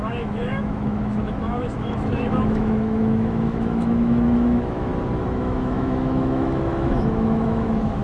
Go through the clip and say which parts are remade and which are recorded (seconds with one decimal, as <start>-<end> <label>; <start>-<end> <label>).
0.0-4.9 remade; 4.9-5.4 recorded; 5.4-8.0 remade